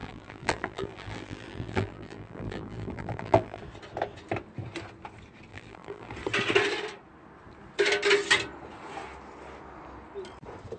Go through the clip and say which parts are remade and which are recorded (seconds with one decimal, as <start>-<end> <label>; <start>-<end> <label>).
0.0-3.6 remade; 3.6-5.5 recorded; 5.5-6.1 remade; 6.1-10.8 recorded